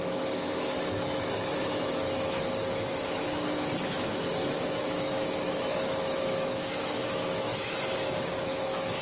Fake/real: fake